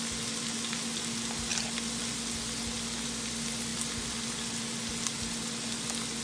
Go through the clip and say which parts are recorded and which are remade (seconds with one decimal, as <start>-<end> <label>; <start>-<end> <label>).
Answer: 0.0-6.2 recorded